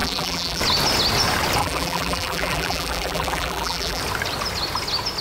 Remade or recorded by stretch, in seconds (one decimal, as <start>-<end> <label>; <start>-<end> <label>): 0.0-0.6 remade; 0.6-1.6 recorded; 1.6-4.0 remade; 4.0-5.2 recorded